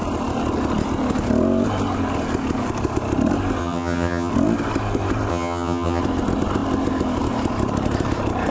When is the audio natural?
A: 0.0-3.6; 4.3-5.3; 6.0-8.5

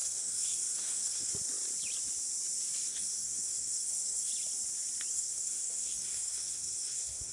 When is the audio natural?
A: 1.3-2.9; 4.3-5.1

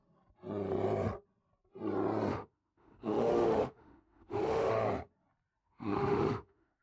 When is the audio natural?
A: 0.0-2.3; 4.7-5.6

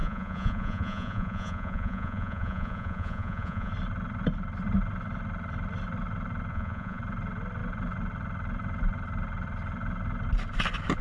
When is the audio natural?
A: 3.7-6.5; 7.0-11.0

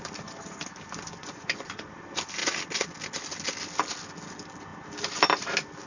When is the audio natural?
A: 0.0-1.2; 1.9-5.9